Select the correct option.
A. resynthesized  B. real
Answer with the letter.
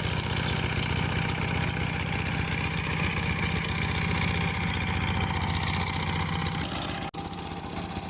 B